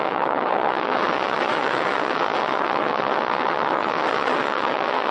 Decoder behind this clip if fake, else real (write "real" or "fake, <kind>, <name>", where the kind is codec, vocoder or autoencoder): fake, vocoder, WaveNeXt